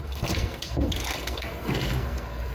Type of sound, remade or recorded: remade